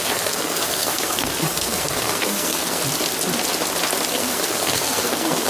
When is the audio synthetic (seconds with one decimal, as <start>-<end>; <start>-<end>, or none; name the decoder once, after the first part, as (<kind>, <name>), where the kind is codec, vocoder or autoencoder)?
0.0-2.8 (codec, SNAC); 4.1-5.5